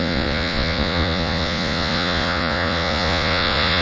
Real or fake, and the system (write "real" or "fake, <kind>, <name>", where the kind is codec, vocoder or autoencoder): fake, vocoder, Vocos